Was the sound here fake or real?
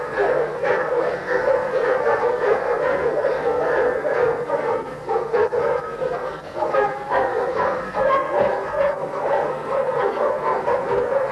fake